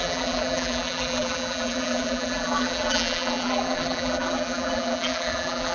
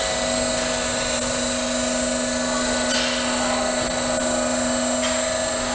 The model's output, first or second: first